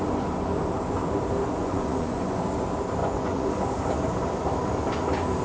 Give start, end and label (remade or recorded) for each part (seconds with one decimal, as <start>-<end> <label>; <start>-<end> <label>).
0.0-1.6 recorded; 1.6-2.4 remade; 2.4-3.0 recorded; 3.0-3.5 remade; 3.5-5.4 recorded